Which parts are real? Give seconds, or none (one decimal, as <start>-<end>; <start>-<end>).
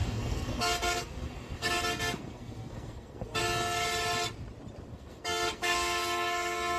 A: 3.4-4.9